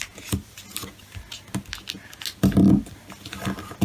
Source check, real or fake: real